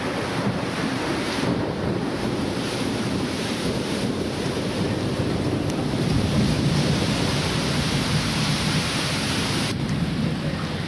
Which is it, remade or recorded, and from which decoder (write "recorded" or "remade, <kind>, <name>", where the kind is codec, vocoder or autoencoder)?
remade, vocoder, BigVGAN v2